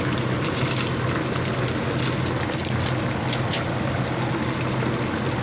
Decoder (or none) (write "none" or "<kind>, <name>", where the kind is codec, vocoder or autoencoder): none